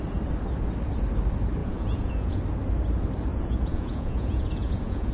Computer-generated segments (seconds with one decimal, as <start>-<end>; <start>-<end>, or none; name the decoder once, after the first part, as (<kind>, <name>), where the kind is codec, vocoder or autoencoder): 1.6-2.4 (vocoder, Vocos); 3.3-5.1